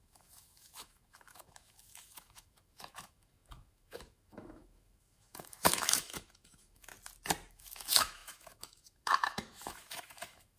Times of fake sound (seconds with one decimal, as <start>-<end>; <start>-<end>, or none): 0.0-6.9; 7.5-10.6